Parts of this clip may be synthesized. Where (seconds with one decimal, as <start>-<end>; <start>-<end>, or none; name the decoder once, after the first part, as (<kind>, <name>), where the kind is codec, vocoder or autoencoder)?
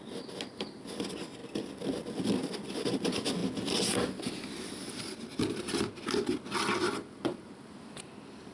none